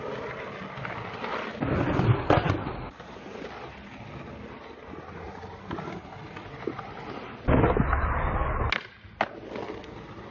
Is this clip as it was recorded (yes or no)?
yes